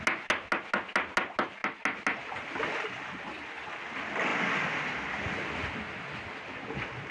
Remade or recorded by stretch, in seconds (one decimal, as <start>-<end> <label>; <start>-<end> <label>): 0.0-4.3 recorded; 4.3-5.3 remade; 5.3-7.1 recorded

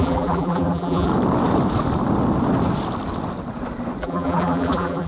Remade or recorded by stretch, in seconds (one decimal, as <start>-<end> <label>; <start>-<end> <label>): 0.0-1.1 remade; 1.1-4.0 recorded; 4.0-5.1 remade